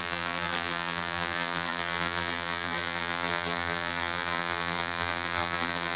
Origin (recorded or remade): remade